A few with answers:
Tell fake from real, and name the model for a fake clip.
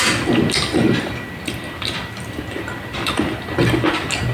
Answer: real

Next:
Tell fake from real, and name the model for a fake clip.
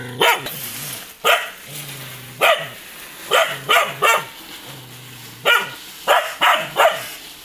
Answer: real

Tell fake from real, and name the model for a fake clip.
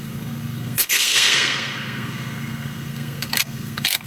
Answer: fake, codec, SNAC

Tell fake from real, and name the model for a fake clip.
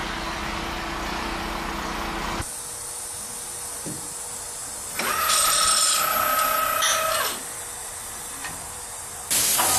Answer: real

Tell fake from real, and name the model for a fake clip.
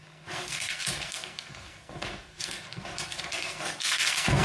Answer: fake, codec, SNAC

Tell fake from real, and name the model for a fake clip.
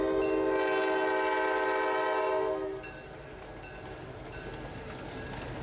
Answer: real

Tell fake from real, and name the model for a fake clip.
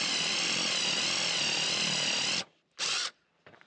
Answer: real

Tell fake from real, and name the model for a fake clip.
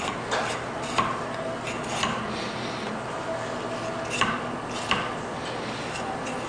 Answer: real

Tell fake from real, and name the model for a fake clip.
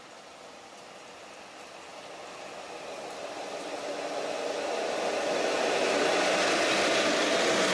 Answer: real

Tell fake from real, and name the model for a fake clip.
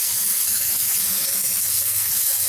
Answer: fake, codec, SNAC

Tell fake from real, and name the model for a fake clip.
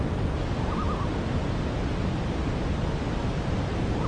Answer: real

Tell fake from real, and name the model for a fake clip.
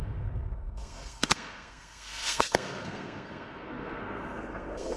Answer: fake, codec, SNAC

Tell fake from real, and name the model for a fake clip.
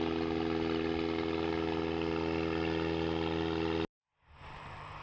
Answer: real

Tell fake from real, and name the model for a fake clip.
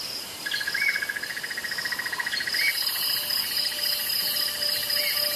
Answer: real